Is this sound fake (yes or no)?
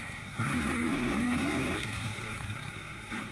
yes